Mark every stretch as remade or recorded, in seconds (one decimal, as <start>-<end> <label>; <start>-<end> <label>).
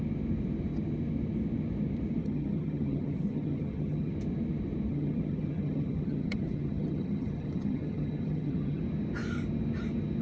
0.0-2.2 recorded; 2.2-4.1 remade; 4.1-4.9 recorded; 4.9-8.8 remade; 8.8-10.2 recorded